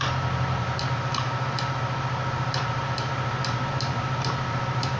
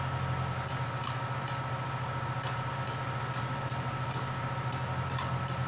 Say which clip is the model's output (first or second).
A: first